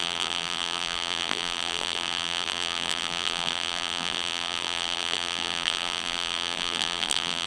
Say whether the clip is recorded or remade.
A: remade